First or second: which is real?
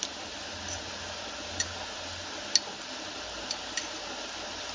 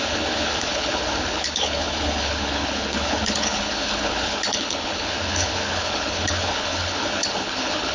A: first